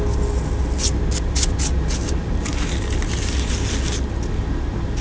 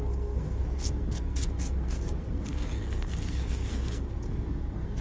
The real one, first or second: first